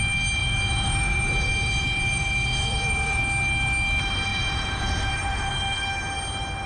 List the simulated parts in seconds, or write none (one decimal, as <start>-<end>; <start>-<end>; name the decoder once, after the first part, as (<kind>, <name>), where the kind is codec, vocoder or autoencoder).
0.4-3.2 (vocoder, Vocos); 4.3-5.5